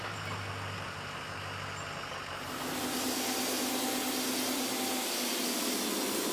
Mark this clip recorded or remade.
recorded